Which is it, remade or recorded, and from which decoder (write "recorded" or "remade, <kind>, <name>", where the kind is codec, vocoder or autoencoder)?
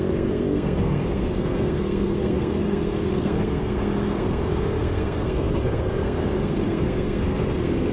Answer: remade, codec, SNAC